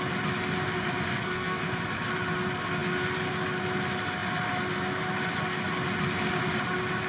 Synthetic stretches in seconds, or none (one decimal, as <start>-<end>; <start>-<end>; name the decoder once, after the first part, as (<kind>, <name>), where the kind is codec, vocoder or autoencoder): 1.1-1.6 (codec, SNAC)